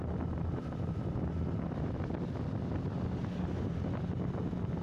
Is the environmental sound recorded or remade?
recorded